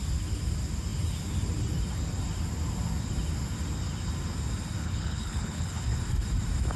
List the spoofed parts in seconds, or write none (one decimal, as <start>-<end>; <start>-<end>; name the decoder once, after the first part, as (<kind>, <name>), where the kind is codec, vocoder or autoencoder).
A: 4.8-6.0 (codec, HILCodec)